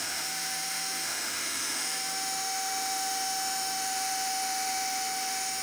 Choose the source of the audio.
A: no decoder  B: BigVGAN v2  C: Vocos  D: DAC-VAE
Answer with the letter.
D